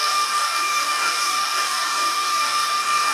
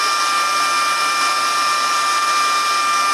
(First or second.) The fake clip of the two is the first